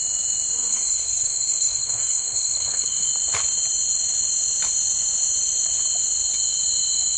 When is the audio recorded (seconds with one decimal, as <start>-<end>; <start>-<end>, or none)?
0.0-0.7; 3.1-7.2